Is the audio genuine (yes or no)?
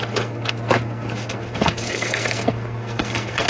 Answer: no